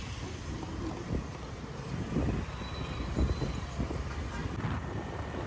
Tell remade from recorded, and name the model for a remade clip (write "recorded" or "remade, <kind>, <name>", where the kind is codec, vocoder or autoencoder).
recorded